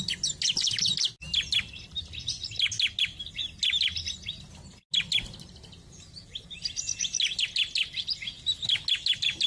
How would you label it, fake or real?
real